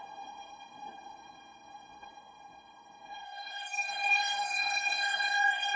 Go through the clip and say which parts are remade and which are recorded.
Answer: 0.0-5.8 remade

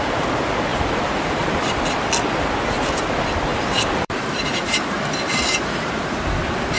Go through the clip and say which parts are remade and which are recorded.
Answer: 0.0-0.7 recorded; 0.7-1.8 remade; 1.8-3.5 recorded; 3.5-6.2 remade; 6.2-6.8 recorded

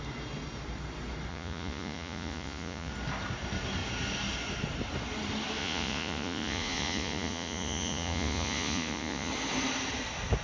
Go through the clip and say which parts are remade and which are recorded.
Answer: 0.0-1.3 recorded; 1.3-2.9 remade; 2.9-5.6 recorded; 5.6-9.3 remade; 9.3-10.4 recorded